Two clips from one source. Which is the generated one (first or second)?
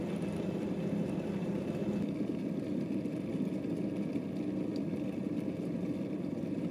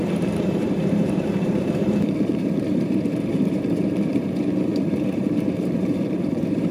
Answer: second